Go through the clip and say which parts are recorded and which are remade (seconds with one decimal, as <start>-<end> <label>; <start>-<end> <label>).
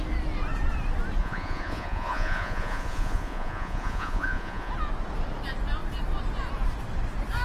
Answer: 0.0-1.2 recorded; 1.2-4.7 remade; 4.7-7.4 recorded